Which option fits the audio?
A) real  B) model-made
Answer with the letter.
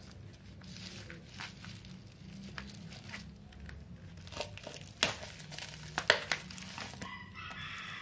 A